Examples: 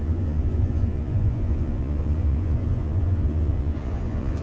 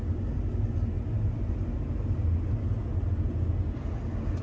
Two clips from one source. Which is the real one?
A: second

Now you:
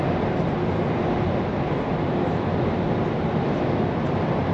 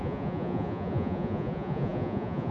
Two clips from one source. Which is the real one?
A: first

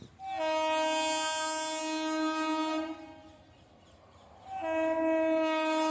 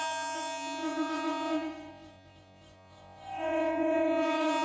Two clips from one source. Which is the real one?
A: first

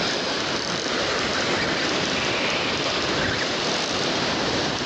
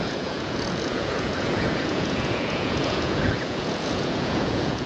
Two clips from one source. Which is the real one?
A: first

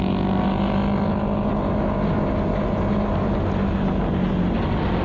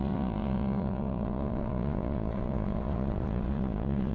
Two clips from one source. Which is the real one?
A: first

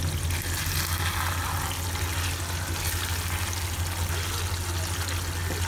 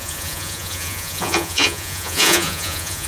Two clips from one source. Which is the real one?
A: first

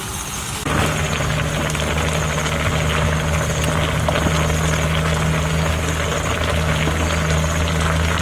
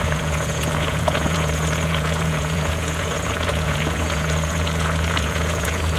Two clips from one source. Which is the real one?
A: first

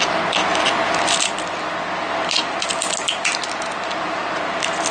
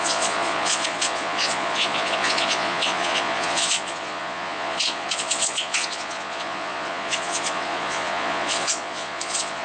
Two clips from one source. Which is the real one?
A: first